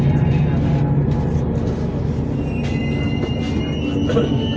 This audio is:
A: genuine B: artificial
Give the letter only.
A